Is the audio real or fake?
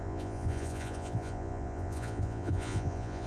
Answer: fake